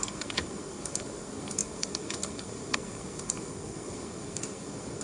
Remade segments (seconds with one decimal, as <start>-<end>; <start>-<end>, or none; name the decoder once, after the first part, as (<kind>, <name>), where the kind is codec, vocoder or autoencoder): 0.0-5.0 (codec, SNAC)